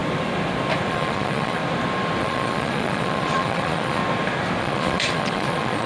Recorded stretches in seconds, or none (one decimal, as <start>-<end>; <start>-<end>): 0.0-0.9; 1.6-2.2; 4.0-4.6